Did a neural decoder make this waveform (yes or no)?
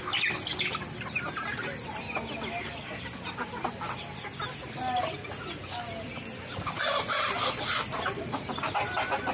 no